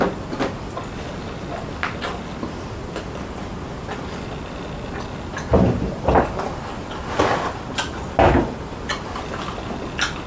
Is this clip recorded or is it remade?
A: recorded